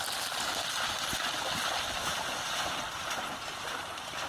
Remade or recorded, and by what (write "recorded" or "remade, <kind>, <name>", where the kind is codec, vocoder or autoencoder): recorded